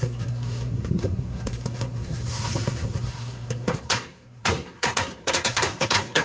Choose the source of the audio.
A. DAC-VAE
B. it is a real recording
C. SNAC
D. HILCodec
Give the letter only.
C